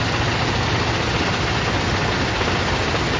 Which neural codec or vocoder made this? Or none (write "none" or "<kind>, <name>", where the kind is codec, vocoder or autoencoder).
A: none